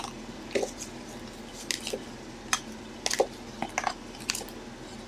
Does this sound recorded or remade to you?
recorded